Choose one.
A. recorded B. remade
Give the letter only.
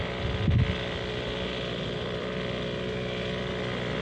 A